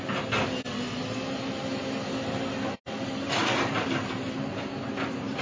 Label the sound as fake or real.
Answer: real